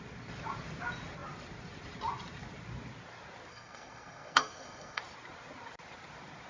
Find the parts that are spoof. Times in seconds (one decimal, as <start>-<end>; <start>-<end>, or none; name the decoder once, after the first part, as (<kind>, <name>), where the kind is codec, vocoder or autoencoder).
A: 3.5-5.0 (codec, SNAC)